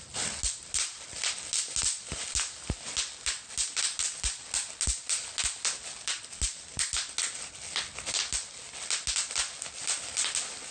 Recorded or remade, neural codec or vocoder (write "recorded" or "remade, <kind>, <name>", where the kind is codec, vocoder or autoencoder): recorded